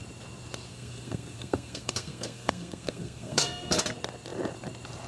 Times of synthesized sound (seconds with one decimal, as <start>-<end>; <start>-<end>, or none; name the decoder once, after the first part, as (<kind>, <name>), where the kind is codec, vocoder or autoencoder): 0.7-3.8 (codec, SNAC)